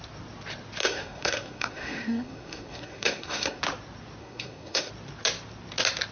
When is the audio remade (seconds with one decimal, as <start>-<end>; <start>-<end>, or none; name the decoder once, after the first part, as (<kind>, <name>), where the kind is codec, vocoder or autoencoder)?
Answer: 0.8-3.6 (codec, SNAC); 4.2-4.9